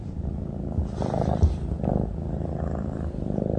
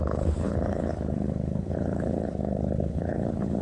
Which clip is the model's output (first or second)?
second